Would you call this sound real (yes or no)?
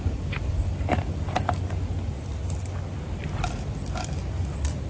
yes